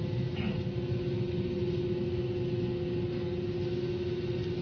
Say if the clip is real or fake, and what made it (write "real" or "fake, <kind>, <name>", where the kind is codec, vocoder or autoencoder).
real